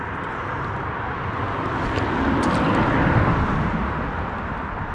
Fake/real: real